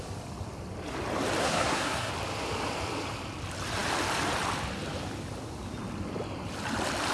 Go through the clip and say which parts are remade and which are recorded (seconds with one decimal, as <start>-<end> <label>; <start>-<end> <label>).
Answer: 0.0-1.4 recorded; 1.4-2.1 remade; 2.1-7.1 recorded